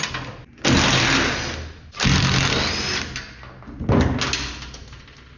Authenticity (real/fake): real